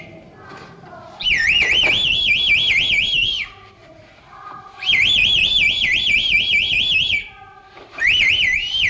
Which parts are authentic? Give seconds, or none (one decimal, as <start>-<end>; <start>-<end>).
0.0-3.8; 8.3-8.9